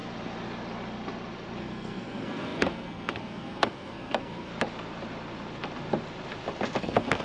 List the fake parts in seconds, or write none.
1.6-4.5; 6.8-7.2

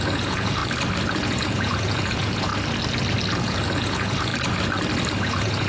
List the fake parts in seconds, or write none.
0.0-0.6; 1.1-2.5; 3.4-4.3; 5.2-5.7

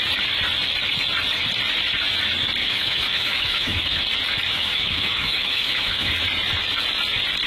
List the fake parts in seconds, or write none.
2.6-4.0; 4.5-6.1

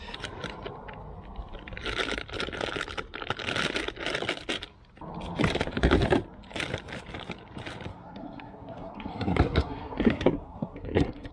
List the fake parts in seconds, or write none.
7.9-11.3